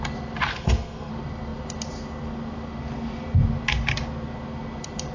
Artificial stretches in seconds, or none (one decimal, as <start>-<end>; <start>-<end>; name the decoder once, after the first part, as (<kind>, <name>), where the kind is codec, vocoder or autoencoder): 0.5-1.1 (codec, SNAC)

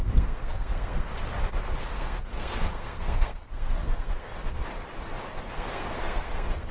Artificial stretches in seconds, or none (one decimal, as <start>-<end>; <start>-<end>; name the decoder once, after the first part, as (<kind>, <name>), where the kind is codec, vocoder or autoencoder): 0.0-1.1 (codec, SNAC); 1.8-4.6; 5.5-6.7

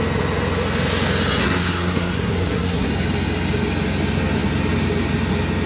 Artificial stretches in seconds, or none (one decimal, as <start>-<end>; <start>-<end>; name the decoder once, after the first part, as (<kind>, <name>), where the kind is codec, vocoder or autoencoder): 1.4-2.9 (codec, SNAC)

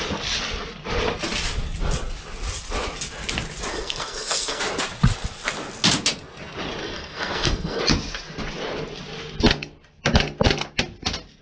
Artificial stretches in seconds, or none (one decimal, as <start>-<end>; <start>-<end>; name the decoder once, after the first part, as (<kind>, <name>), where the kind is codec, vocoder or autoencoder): 3.7-4.6 (codec, SNAC); 6.8-7.8